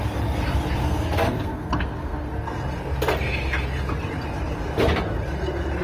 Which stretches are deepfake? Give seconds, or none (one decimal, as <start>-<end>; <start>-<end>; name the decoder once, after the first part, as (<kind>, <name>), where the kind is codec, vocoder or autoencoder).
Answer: 0.8-2.3 (codec, SNAC)